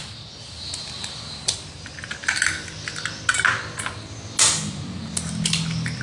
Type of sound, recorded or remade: recorded